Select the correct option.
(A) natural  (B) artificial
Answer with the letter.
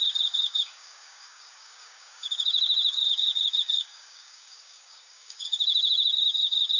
B